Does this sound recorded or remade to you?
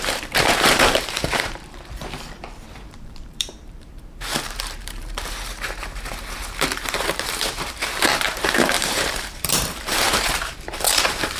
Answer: remade